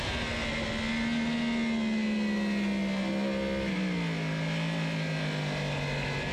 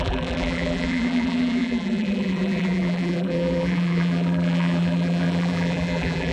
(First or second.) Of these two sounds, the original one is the first